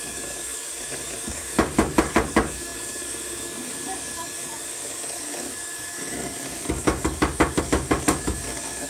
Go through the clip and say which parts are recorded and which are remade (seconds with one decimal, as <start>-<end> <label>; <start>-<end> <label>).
0.0-8.9 remade